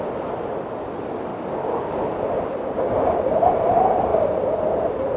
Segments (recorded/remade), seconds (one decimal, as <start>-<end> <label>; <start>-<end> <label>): 0.0-1.3 recorded; 1.3-1.9 remade; 1.9-5.2 recorded